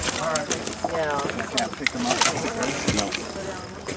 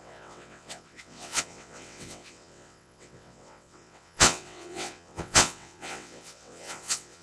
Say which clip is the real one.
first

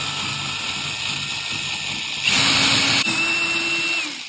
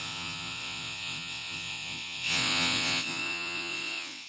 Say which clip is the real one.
first